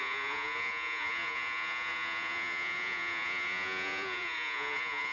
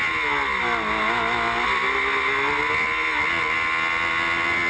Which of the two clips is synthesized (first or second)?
first